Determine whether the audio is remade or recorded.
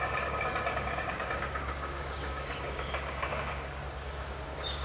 remade